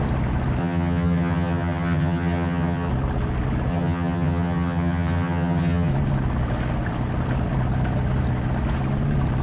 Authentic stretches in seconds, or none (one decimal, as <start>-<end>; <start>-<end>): 0.0-0.6; 2.9-3.7; 5.9-9.4